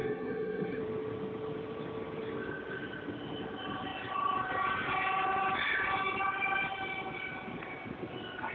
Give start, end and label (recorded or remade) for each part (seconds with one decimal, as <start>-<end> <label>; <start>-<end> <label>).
0.0-0.8 remade; 0.8-8.5 recorded